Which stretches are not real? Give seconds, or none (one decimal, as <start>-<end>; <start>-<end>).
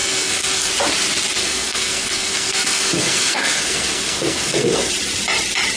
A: 0.0-0.7; 1.4-4.9